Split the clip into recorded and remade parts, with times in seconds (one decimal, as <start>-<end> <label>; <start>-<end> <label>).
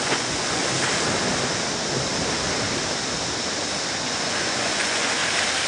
0.0-0.6 remade; 0.6-4.0 recorded; 4.0-5.2 remade; 5.2-5.7 recorded